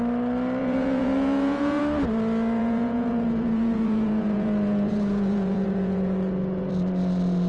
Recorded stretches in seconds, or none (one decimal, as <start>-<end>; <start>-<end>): 0.0-0.6; 1.8-2.6; 6.7-7.5